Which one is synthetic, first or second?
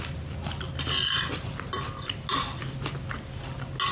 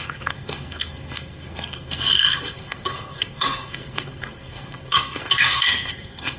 second